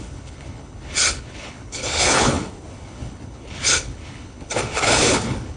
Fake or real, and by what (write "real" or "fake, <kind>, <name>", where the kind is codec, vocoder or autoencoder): fake, codec, HILCodec